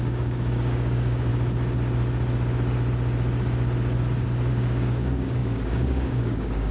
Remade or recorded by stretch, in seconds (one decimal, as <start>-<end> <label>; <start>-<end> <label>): 0.0-1.3 remade; 1.3-4.5 recorded; 4.5-6.7 remade